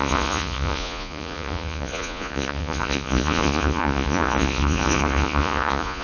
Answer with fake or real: fake